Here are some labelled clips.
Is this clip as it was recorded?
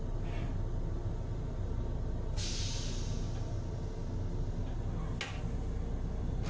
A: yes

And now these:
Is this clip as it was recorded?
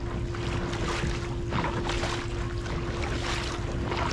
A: yes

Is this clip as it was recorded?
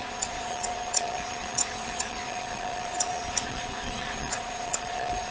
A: no